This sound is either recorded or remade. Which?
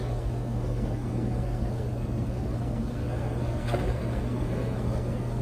remade